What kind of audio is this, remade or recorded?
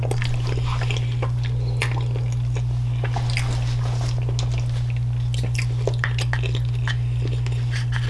recorded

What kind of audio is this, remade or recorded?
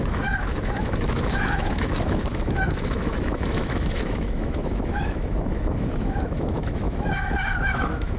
remade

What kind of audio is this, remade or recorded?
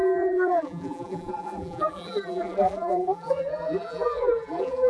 remade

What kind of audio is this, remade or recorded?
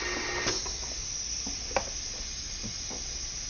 recorded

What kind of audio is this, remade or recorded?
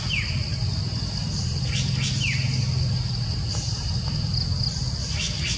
recorded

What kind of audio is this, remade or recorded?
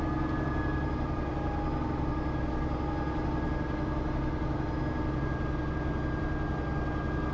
recorded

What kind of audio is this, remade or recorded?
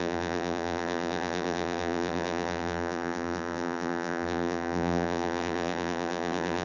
remade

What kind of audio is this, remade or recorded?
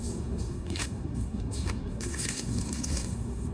remade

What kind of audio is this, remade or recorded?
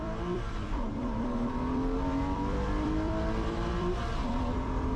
remade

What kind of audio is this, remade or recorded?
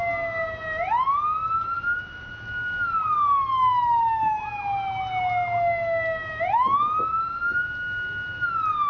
recorded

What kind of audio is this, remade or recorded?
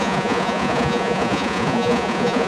remade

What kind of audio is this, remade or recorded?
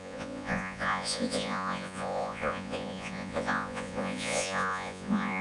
remade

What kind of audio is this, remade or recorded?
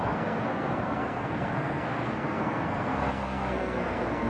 remade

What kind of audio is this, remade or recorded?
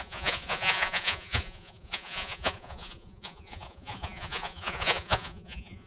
remade